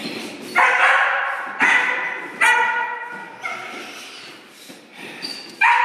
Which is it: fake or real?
fake